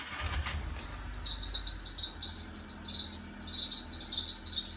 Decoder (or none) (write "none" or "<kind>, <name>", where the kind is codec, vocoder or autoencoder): none